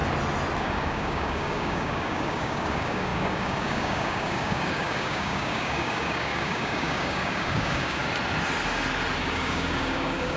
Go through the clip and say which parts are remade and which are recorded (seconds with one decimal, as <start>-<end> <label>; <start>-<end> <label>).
0.0-0.6 recorded; 0.6-8.0 remade; 8.0-9.2 recorded; 9.2-10.4 remade